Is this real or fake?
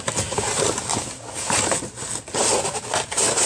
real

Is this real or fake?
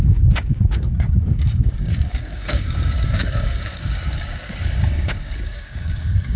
fake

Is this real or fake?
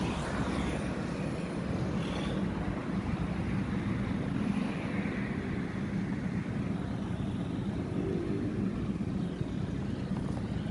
real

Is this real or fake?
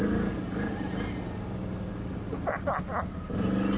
real